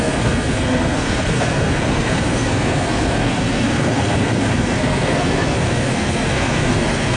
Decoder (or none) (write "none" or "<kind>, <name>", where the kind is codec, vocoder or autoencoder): codec, SNAC